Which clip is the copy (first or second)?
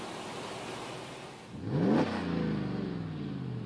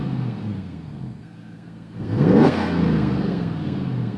second